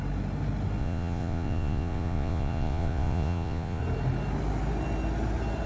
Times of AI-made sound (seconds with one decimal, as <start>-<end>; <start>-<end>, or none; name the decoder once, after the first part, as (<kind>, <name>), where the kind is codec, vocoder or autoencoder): 0.8-3.8 (vocoder, Vocos)

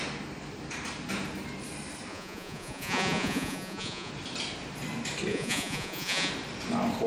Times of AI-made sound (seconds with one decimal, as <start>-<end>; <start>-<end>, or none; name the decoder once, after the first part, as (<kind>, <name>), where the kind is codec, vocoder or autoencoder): 2.1-4.1 (vocoder, Vocos); 5.3-6.3